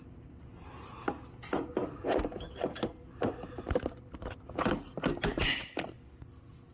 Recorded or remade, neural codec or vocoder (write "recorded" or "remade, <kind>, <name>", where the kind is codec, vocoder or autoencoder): recorded